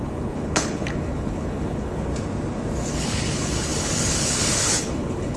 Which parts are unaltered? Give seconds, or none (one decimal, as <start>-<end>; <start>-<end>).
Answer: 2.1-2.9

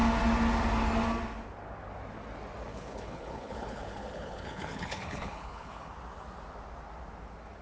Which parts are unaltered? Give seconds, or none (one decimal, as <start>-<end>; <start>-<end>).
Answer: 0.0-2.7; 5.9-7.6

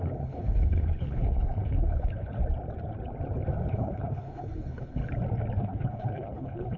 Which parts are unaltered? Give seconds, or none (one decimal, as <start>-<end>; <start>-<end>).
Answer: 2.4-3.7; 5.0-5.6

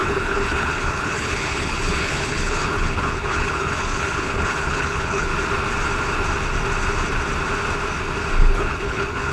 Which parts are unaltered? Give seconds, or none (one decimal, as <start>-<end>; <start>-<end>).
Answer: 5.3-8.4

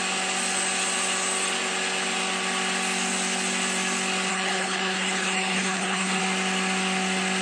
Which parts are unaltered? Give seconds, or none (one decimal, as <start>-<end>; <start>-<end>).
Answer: 0.0-4.3; 6.2-7.4

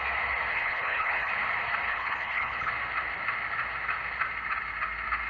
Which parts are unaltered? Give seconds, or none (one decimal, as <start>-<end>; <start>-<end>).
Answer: 0.0-0.5; 1.3-1.9; 2.7-5.3

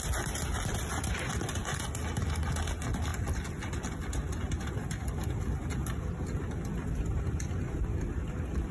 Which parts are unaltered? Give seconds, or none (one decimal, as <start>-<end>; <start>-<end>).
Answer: 0.0-8.7

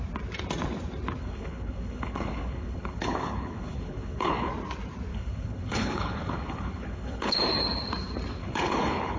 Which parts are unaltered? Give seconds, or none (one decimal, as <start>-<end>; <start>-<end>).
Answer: 0.0-1.2; 4.5-5.1; 7.4-8.4